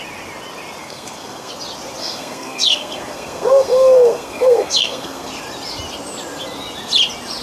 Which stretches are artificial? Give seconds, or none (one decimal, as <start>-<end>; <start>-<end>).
0.8-1.5; 2.0-5.3